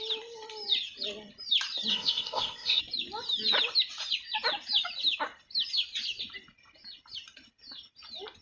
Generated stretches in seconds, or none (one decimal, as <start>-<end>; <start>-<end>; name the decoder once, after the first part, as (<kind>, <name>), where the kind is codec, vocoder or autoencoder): 1.9-2.8 (codec, ZipCodec)

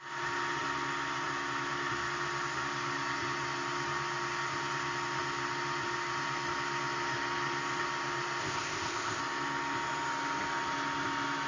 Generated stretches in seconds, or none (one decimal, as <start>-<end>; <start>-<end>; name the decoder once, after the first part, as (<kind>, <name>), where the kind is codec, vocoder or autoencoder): 8.4-9.2 (codec, ZipCodec)

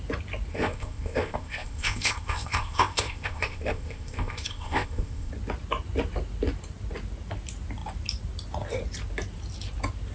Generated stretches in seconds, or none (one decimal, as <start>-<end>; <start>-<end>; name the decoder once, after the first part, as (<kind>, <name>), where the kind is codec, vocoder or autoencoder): 0.5-5.3 (codec, ZipCodec)

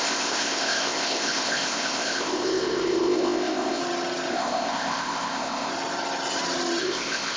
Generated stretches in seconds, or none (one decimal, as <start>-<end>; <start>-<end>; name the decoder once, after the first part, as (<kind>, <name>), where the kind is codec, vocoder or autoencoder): 0.0-3.8 (codec, ZipCodec); 4.3-5.7; 6.8-7.4

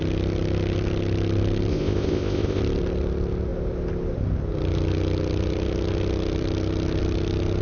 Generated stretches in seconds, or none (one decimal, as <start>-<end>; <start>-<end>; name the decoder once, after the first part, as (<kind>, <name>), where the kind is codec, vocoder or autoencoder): 1.7-2.6 (codec, ZipCodec)

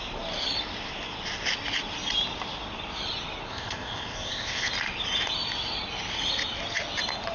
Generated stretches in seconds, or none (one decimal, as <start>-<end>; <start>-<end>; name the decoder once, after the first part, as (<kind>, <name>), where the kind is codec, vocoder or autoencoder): 3.5-4.7 (codec, ZipCodec)